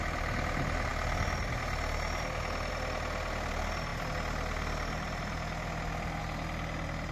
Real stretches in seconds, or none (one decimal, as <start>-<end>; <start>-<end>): 0.0-7.1